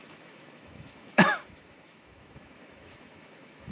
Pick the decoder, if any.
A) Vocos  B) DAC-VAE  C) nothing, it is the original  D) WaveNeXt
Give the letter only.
B